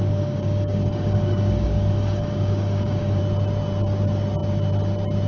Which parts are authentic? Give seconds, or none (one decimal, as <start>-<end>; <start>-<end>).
3.2-5.3